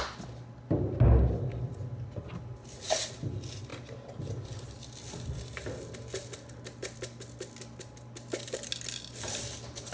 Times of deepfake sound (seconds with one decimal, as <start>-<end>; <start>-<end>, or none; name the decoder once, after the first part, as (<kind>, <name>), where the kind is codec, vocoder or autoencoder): none